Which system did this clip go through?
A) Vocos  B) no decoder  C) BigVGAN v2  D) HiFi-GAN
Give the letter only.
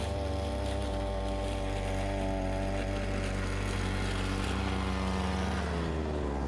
B